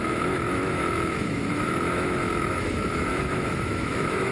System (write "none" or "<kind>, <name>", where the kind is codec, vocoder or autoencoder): autoencoder, DAC-VAE